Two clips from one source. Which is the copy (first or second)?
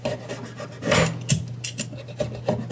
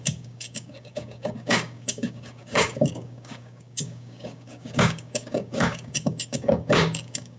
second